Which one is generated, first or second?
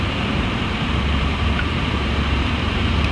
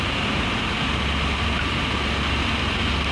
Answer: first